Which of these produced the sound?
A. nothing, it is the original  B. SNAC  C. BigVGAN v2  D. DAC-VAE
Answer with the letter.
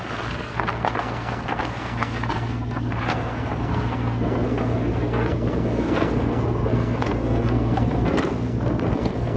B